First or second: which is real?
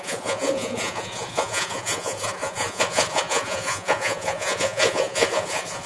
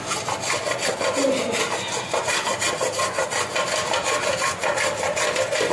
second